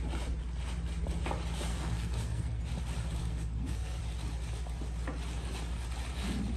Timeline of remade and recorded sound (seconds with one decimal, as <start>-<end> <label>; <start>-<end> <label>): 0.0-1.7 recorded; 1.7-2.6 remade; 2.6-3.2 recorded; 3.2-4.0 remade; 4.0-6.6 recorded